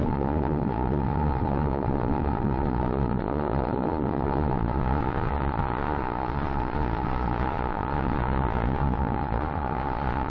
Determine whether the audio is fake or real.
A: fake